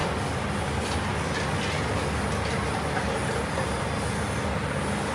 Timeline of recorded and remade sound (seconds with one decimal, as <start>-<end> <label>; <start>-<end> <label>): 0.0-5.1 recorded